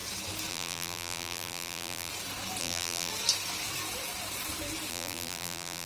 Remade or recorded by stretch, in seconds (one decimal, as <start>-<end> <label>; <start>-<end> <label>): 0.0-0.5 recorded; 0.5-2.1 remade; 2.1-2.6 recorded; 2.6-3.1 remade; 3.1-4.9 recorded; 4.9-5.9 remade